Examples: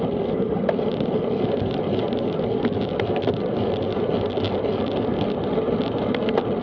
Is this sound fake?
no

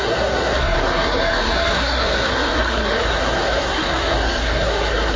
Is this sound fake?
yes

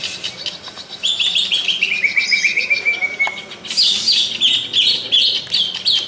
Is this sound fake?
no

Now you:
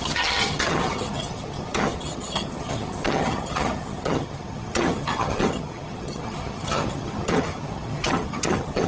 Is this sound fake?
yes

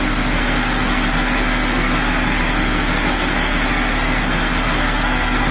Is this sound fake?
yes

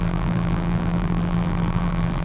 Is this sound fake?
yes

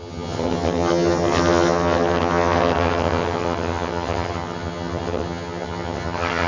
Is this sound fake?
yes